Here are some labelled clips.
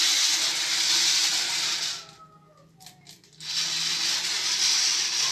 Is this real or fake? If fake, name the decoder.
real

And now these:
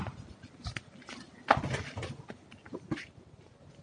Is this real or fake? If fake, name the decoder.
real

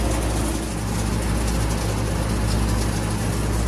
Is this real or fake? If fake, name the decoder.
real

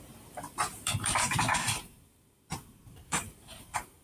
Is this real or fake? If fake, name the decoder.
fake, vocoder, BigVGAN v2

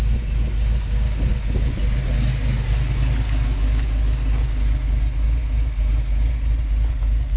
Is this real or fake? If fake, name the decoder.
real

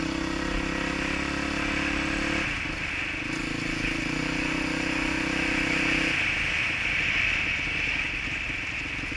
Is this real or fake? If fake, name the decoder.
real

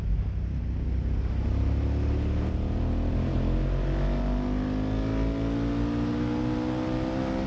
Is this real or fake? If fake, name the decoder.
real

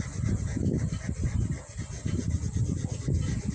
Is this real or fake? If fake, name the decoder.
real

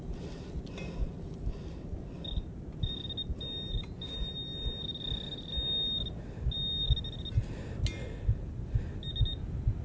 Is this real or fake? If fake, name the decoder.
real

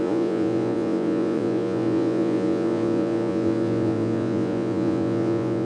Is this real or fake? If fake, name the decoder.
fake, vocoder, Vocos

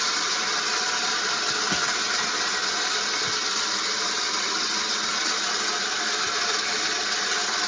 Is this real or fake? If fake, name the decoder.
real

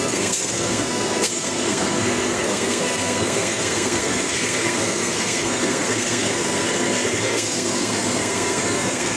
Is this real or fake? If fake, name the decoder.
fake, codec, SNAC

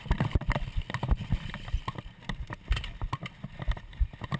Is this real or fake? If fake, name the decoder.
real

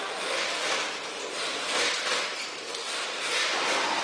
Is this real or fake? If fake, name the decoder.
real